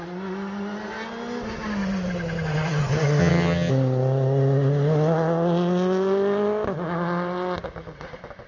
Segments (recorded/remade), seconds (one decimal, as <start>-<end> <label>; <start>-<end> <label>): 0.0-3.2 recorded; 3.2-3.7 remade; 3.7-8.5 recorded